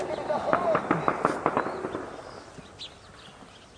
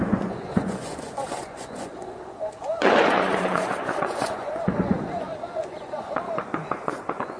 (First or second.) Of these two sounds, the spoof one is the second